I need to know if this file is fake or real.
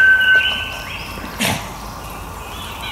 real